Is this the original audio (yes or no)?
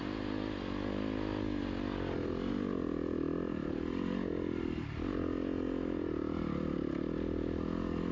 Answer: yes